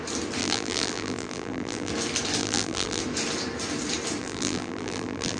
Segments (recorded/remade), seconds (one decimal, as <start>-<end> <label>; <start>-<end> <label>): 0.0-0.4 recorded; 0.4-1.9 remade; 1.9-2.4 recorded; 2.4-3.0 remade; 3.0-4.2 recorded; 4.2-5.4 remade